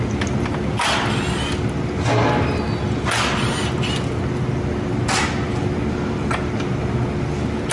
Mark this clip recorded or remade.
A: recorded